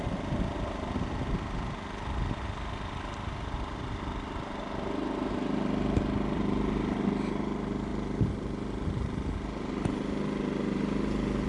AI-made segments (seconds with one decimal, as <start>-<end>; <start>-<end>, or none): none